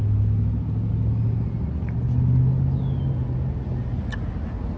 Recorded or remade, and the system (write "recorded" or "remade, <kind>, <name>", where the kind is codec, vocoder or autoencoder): recorded